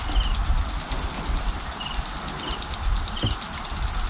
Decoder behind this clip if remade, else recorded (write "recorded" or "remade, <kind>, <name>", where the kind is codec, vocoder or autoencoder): recorded